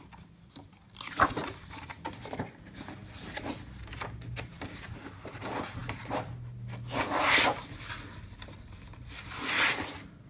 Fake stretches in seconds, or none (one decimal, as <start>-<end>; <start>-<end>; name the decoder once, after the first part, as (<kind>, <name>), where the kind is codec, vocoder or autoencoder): none